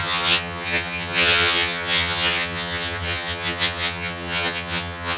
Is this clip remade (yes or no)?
yes